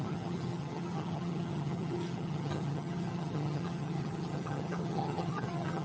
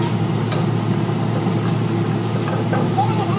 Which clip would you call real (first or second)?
second